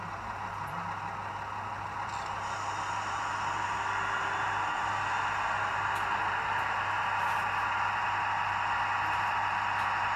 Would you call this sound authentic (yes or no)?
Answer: yes